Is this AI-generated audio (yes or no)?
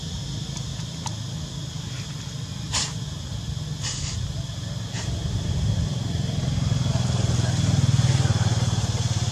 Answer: no